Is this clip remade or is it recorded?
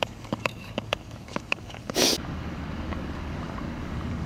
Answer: remade